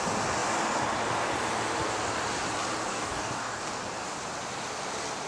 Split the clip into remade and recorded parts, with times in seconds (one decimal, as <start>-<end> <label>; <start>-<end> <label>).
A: 0.0-2.9 recorded; 2.9-3.6 remade; 3.6-5.3 recorded